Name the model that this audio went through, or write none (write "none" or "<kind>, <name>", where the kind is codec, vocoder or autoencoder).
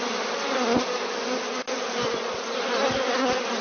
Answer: none